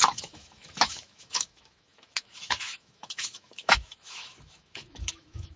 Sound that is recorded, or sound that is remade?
remade